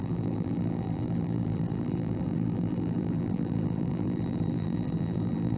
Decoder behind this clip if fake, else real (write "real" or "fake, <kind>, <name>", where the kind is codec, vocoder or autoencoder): fake, vocoder, BigVGAN v2